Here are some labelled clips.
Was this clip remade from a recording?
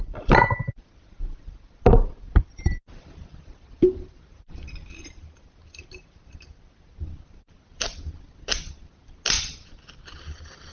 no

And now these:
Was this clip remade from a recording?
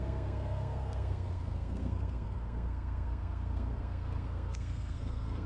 yes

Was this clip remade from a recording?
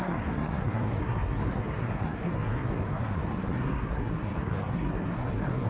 yes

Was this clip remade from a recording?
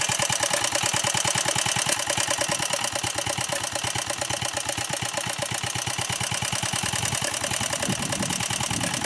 no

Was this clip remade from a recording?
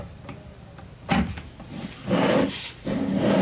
no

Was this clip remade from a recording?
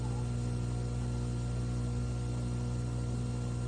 no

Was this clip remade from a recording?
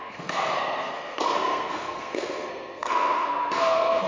yes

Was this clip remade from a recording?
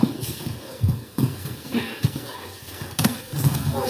yes